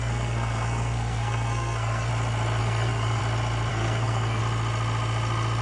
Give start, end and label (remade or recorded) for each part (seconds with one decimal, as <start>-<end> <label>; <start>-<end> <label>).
0.0-2.1 remade; 2.1-2.6 recorded; 2.6-3.2 remade; 3.2-3.7 recorded; 3.7-4.4 remade; 4.4-5.6 recorded